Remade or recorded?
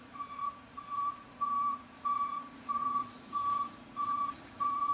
remade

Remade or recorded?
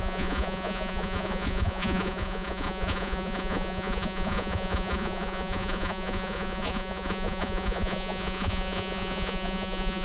remade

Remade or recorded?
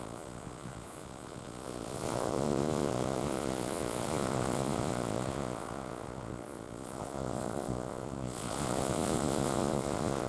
remade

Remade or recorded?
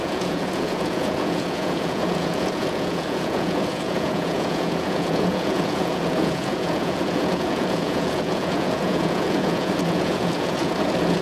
remade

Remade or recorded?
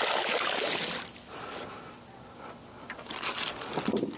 recorded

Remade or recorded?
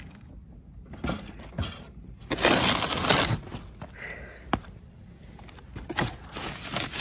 recorded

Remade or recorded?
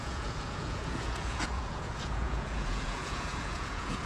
remade